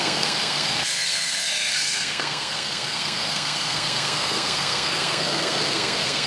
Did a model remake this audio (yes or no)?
yes